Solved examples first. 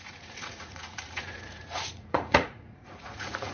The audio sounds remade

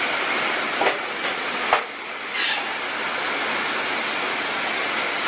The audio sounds recorded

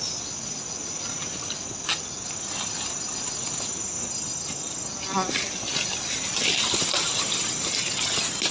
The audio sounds recorded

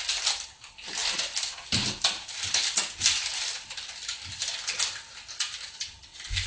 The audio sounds recorded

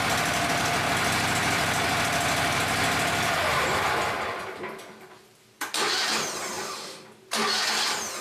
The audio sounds recorded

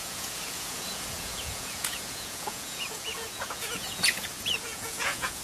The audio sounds remade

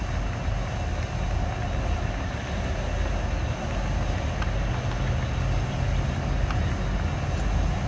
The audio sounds recorded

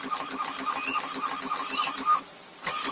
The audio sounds recorded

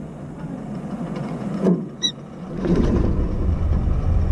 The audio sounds remade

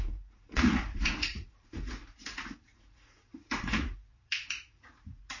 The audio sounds remade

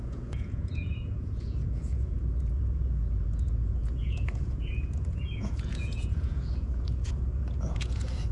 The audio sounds remade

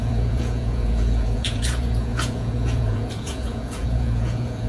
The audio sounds remade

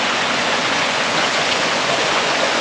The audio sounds remade